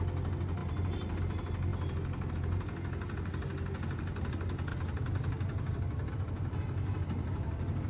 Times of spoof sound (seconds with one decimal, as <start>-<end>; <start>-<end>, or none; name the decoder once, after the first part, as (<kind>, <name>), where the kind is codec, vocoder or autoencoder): none